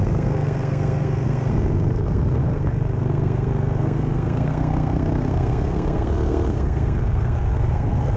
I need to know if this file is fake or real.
fake